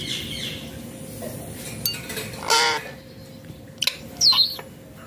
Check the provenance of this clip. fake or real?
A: real